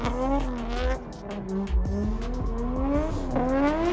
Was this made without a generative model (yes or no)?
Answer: yes